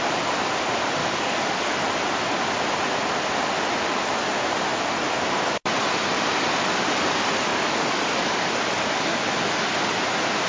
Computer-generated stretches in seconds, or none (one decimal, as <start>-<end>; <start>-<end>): 1.0-1.8; 7.5-9.2